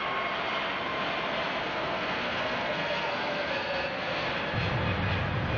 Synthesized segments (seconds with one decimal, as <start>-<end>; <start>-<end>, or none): 1.6-4.3